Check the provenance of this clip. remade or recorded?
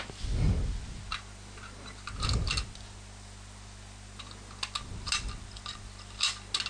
recorded